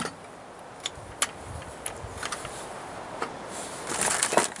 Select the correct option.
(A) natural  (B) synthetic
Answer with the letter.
A